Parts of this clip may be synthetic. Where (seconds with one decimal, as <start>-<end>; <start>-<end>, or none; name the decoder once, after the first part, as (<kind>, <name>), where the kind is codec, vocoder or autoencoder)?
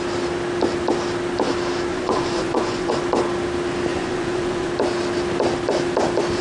1.9-2.9 (vocoder, Vocos); 3.9-4.7